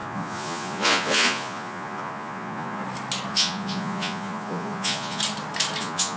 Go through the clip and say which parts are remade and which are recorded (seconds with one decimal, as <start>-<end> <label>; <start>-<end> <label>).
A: 0.0-2.8 remade; 2.8-3.3 recorded; 3.3-5.2 remade; 5.2-5.8 recorded; 5.8-6.2 remade